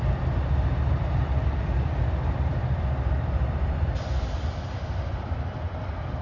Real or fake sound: fake